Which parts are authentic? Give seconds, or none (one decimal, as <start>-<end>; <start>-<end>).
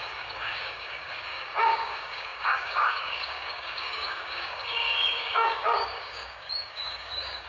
none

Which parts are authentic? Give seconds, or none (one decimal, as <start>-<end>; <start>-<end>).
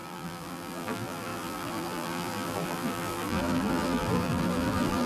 none